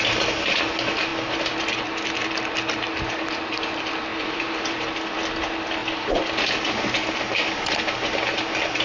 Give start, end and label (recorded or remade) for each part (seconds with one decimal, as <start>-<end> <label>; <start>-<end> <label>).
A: 0.0-4.1 recorded; 4.1-4.9 remade; 4.9-8.8 recorded